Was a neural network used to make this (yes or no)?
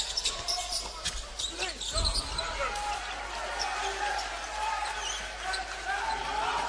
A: no